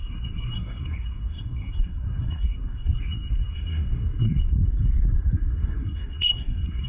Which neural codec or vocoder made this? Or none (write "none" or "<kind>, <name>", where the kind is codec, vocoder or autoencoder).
codec, SNAC